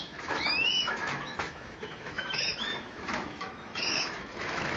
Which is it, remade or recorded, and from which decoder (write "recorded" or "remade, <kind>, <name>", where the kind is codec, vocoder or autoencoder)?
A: remade, autoencoder, DAC-VAE